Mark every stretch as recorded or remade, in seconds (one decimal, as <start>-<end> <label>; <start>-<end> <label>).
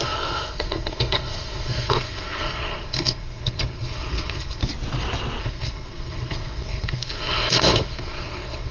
0.0-4.6 remade; 4.6-5.4 recorded; 5.4-8.7 remade